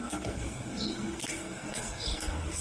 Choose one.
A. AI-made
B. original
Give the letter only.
A